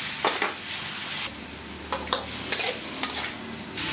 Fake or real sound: real